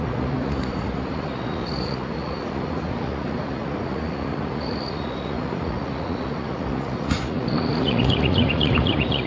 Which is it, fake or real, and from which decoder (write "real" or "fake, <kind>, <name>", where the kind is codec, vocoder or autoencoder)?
fake, vocoder, Vocos